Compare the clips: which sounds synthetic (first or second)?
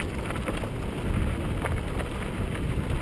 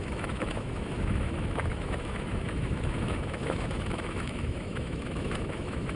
second